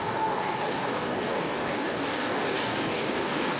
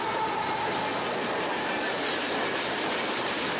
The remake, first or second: first